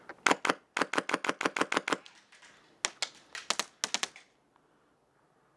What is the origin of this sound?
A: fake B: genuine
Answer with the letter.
B